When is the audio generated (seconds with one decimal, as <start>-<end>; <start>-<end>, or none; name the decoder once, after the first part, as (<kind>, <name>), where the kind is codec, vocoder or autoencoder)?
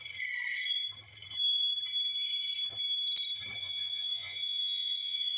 3.6-5.4 (vocoder, Vocos)